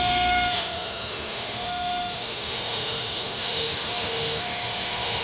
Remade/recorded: remade